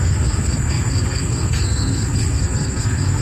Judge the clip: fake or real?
fake